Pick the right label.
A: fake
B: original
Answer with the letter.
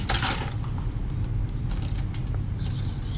B